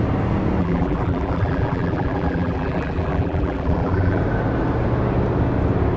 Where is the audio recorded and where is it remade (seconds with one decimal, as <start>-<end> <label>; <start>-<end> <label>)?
0.0-0.6 recorded; 0.6-4.2 remade; 4.2-6.0 recorded